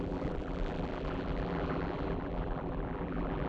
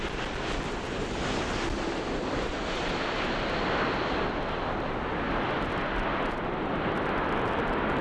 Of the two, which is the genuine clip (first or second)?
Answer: second